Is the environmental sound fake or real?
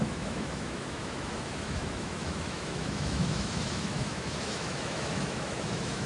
fake